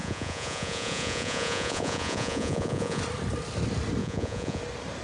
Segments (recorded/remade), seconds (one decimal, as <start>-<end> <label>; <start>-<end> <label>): 0.0-3.0 remade; 3.0-4.0 recorded; 4.0-4.6 remade; 4.6-5.0 recorded

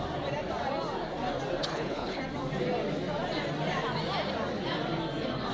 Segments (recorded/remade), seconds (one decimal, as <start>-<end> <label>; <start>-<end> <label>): 0.0-1.6 recorded; 1.6-2.2 remade; 2.2-5.5 recorded

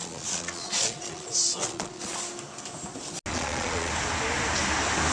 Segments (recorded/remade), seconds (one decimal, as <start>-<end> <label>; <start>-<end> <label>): 0.0-2.2 remade; 2.2-3.3 recorded; 3.3-3.9 remade; 3.9-5.1 recorded

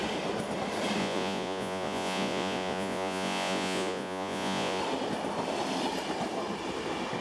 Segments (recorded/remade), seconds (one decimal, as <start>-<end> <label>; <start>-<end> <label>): 0.0-1.0 recorded; 1.0-4.8 remade; 4.8-7.2 recorded

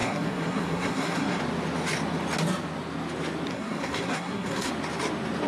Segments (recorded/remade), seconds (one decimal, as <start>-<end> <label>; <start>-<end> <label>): 0.0-1.4 remade; 1.4-3.5 recorded; 3.5-4.7 remade; 4.7-5.5 recorded

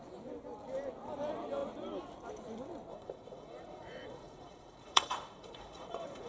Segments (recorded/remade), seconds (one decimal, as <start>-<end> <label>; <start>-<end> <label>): 0.0-2.9 recorded; 2.9-6.3 remade

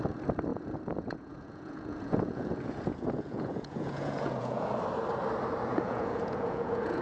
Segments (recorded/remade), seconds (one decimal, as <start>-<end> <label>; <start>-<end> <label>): 0.0-0.5 recorded; 0.5-4.7 remade; 4.7-5.7 recorded; 5.7-7.0 remade

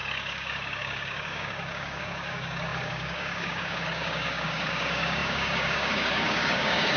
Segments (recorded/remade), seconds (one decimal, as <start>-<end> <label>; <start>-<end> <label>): 0.0-7.0 remade